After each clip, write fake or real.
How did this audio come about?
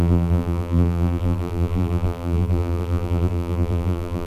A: fake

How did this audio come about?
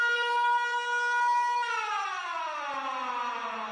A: real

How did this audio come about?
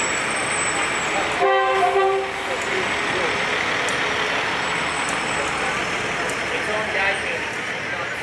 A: real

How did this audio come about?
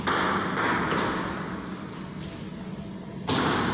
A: real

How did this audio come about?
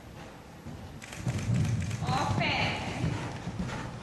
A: real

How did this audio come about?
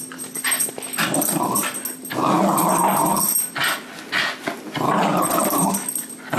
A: real